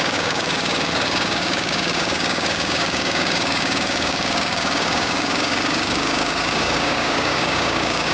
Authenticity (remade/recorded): remade